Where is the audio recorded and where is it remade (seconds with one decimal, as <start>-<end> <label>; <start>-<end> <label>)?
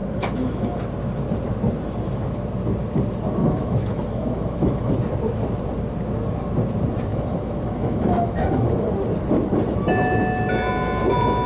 0.0-0.8 remade; 0.8-3.4 recorded; 3.4-4.9 remade; 4.9-7.1 recorded; 7.1-8.9 remade; 8.9-11.5 recorded